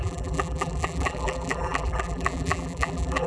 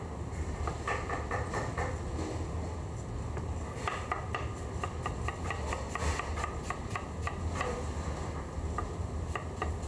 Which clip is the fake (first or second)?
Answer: first